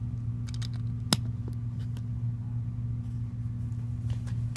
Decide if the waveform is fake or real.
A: real